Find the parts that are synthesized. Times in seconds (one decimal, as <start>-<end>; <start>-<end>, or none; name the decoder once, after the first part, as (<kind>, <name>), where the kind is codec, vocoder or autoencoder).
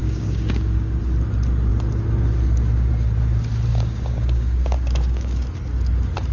0.0-1.0 (codec, DAC); 3.7-5.4